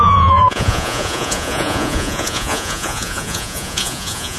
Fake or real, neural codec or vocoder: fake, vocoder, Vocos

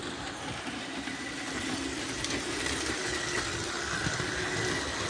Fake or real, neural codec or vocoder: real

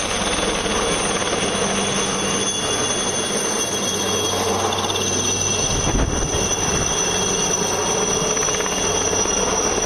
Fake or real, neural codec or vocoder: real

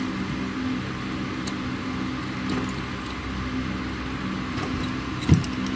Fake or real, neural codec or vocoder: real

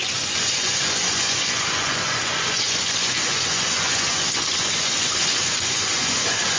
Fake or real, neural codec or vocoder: fake, vocoder, Vocos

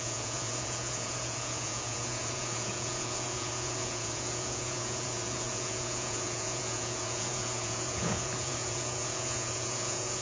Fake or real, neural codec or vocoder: fake, vocoder, Vocos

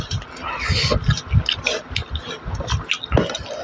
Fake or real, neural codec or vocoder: real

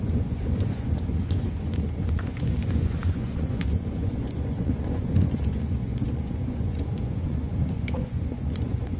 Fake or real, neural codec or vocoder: fake, vocoder, Vocos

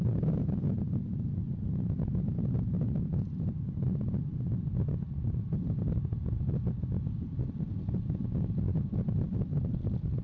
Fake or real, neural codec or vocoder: real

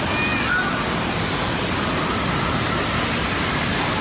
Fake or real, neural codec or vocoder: real